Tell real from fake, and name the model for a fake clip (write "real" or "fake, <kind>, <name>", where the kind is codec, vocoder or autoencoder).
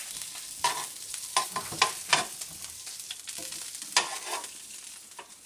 real